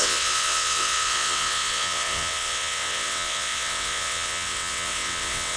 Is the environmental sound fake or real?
fake